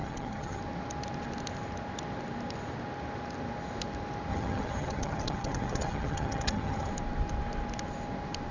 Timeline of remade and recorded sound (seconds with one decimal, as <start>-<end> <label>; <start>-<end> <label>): 0.0-0.6 remade; 0.6-4.3 recorded; 4.3-6.9 remade; 6.9-8.5 recorded